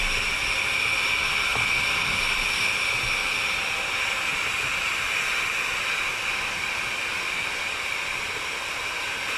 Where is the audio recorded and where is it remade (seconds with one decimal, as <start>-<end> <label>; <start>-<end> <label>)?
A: 0.0-1.5 recorded; 1.5-2.5 remade; 2.5-4.3 recorded; 4.3-7.9 remade; 7.9-9.4 recorded